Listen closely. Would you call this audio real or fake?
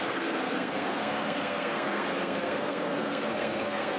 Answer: fake